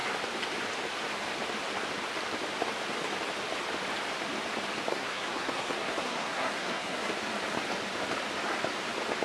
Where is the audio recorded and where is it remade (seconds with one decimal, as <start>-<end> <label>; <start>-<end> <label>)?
0.0-4.9 recorded; 4.9-7.1 remade; 7.1-9.2 recorded

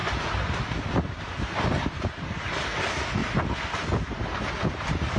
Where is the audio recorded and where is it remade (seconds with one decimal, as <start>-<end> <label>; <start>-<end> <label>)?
0.0-1.2 recorded; 1.2-3.2 remade; 3.2-4.7 recorded; 4.7-5.2 remade

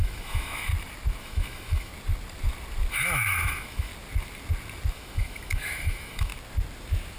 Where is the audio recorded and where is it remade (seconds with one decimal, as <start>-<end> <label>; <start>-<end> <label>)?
0.0-0.7 remade; 0.7-1.2 recorded; 1.2-1.9 remade; 1.9-2.9 recorded; 2.9-3.9 remade; 3.9-4.9 recorded; 4.9-6.3 remade; 6.3-7.2 recorded

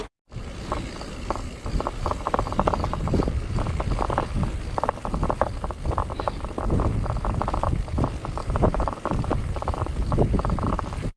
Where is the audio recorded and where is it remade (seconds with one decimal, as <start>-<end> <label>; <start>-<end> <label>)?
0.0-8.4 recorded; 8.4-10.7 remade; 10.7-11.2 recorded

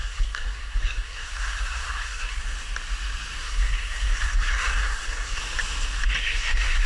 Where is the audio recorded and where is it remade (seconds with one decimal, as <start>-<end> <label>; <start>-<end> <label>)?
0.0-2.4 remade; 2.4-3.4 recorded; 3.4-5.4 remade; 5.4-6.2 recorded; 6.2-6.9 remade

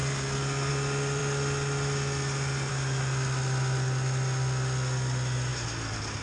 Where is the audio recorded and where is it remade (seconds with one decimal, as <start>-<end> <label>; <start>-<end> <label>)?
0.0-6.2 recorded